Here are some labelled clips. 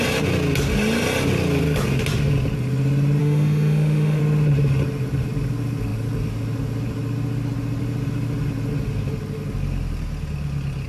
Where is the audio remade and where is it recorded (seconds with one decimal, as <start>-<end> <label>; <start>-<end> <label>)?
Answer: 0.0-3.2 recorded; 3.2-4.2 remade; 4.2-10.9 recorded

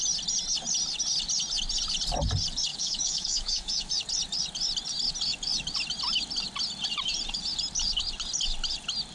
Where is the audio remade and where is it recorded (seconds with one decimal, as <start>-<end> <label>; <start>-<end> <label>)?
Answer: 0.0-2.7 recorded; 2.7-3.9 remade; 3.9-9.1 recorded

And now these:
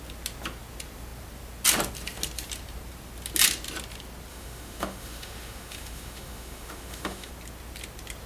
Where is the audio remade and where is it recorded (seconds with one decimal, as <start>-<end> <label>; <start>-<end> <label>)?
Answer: 0.0-4.3 recorded; 4.3-7.3 remade; 7.3-8.3 recorded

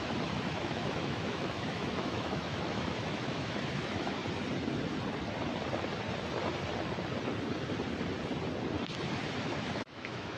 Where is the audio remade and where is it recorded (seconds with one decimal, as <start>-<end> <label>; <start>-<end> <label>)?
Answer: 0.0-4.2 remade; 4.2-9.4 recorded; 9.4-10.4 remade